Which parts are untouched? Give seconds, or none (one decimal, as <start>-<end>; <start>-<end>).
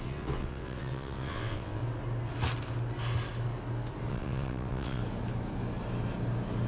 1.8-4.1; 5.0-6.7